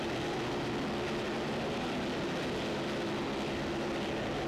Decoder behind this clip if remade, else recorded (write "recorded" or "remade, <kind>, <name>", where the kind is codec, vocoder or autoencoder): recorded